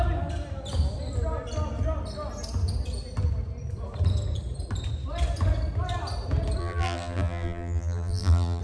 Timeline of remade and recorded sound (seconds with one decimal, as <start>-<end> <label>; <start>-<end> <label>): 0.0-6.6 recorded; 6.6-8.6 remade